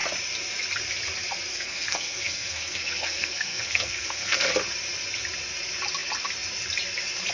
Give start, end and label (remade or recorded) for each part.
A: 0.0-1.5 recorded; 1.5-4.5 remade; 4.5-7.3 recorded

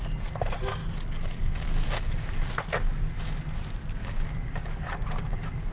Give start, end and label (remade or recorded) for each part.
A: 0.0-0.8 recorded; 0.8-2.5 remade; 2.5-4.0 recorded; 4.0-5.7 remade

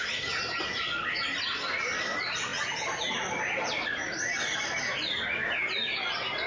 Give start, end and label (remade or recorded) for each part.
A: 0.0-6.5 recorded